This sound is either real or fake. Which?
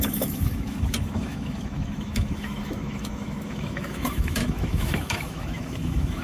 fake